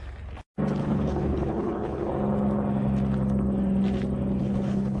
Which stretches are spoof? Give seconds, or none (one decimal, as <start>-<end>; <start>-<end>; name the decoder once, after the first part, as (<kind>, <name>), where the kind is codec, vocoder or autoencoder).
0.8-2.1 (codec, HILCodec); 4.4-5.0